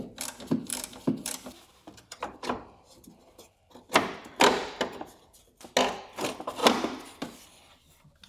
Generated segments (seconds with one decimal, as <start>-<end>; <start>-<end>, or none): 0.7-5.4